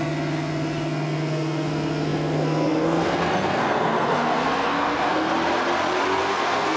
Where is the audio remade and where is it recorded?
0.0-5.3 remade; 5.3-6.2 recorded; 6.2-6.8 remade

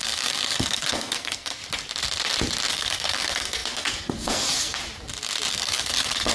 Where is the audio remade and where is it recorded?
0.0-1.6 remade; 1.6-2.7 recorded; 2.7-4.8 remade; 4.8-5.5 recorded; 5.5-6.3 remade

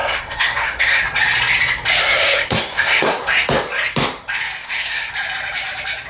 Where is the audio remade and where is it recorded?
0.0-1.0 remade; 1.0-2.0 recorded; 2.0-3.2 remade; 3.2-4.6 recorded; 4.6-5.1 remade; 5.1-6.1 recorded

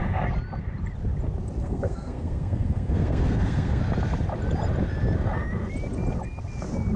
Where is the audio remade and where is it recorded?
0.0-1.6 recorded; 1.6-3.8 remade; 3.8-7.0 recorded

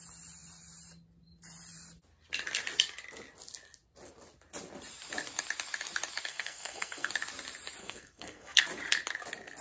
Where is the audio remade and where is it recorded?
0.0-6.3 recorded; 6.3-7.1 remade; 7.1-7.8 recorded; 7.8-8.6 remade; 8.6-9.6 recorded